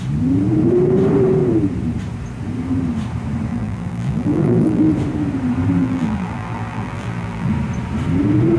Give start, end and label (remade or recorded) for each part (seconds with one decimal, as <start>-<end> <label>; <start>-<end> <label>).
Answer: 0.0-3.5 recorded; 3.5-4.9 remade; 4.9-5.8 recorded; 5.8-7.5 remade; 7.5-8.6 recorded